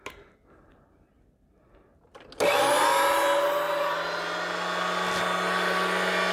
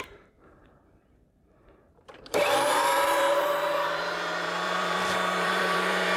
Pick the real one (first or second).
first